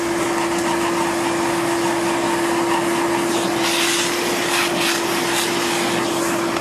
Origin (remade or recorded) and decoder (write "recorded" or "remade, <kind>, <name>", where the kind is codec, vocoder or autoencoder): recorded